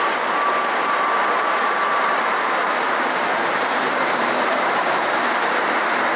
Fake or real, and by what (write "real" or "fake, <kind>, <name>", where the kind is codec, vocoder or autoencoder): fake, vocoder, BigVGAN v2